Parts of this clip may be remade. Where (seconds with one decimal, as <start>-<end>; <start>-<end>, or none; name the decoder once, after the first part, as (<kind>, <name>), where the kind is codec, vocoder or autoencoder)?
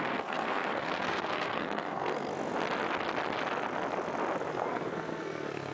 0.0-2.3 (codec, SNAC); 4.5-5.7